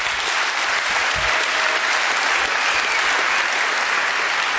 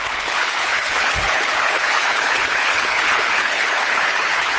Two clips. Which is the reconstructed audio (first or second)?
second